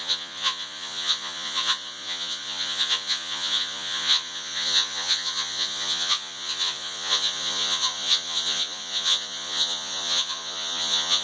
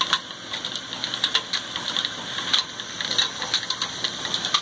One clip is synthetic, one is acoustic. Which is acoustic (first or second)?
second